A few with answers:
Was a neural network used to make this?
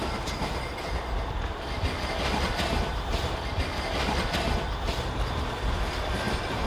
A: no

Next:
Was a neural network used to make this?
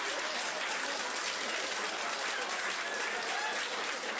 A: no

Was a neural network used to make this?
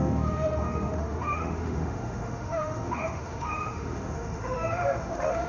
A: yes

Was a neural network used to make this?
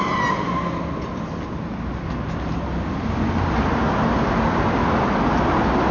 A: no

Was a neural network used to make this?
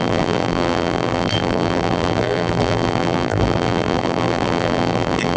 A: yes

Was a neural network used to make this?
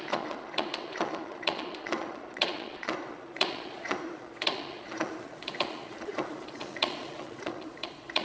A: yes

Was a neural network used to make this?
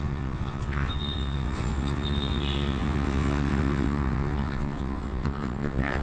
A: yes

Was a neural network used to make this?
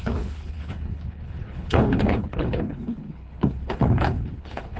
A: yes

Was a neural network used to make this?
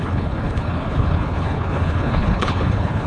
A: yes